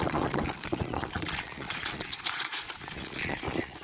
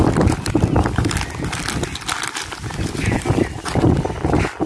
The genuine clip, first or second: second